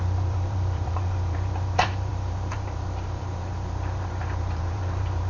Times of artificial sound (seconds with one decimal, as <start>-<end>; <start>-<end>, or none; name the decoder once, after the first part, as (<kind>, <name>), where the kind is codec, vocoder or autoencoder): 0.0-5.3 (vocoder, BigVGAN v2)